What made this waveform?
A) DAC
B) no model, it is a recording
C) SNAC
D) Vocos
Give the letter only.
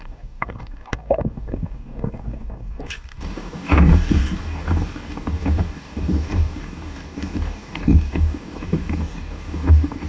A